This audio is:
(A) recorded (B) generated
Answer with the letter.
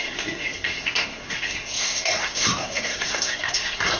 B